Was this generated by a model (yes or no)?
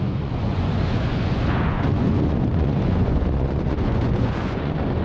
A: yes